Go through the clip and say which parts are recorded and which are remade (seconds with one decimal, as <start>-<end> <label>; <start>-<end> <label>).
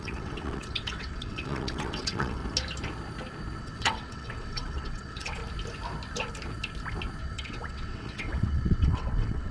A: 0.0-2.4 remade; 2.4-3.6 recorded; 3.6-5.4 remade; 5.4-7.2 recorded; 7.2-9.5 remade